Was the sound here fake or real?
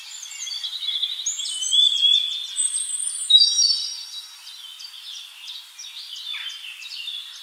fake